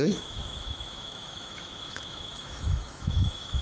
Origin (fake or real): fake